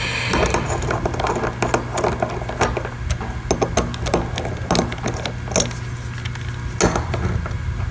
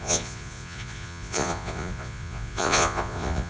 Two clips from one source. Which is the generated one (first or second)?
second